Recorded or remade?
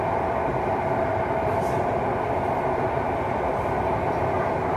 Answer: recorded